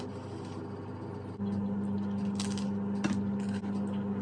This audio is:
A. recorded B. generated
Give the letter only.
A